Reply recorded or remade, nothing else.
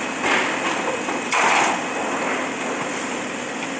recorded